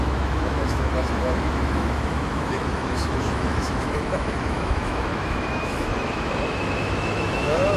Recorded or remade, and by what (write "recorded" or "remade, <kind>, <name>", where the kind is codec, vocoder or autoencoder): remade, autoencoder, DAC-VAE